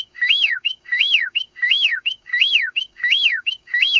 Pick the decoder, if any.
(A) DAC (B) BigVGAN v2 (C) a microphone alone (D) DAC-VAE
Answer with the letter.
A